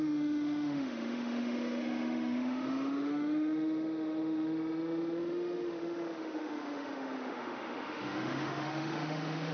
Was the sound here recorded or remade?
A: remade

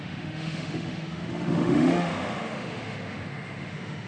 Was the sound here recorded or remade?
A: remade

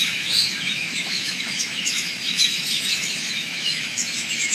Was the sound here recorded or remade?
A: remade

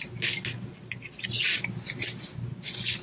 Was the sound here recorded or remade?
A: recorded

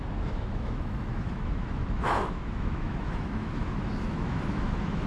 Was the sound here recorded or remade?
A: remade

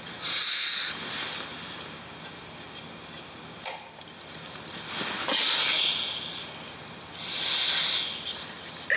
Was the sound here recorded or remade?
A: recorded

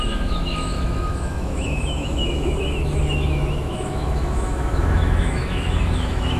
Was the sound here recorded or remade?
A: remade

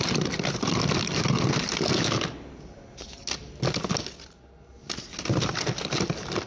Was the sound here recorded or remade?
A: recorded